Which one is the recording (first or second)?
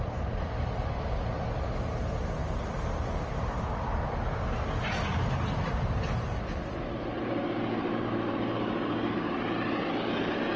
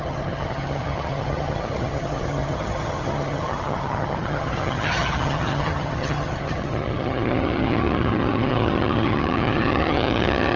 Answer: first